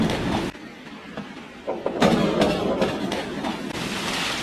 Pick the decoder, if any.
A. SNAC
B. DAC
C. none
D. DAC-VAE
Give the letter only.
C